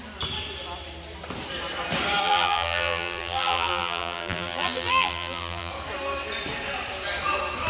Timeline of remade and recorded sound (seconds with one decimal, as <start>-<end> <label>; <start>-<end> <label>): 0.0-2.2 recorded; 2.2-5.7 remade; 5.7-7.7 recorded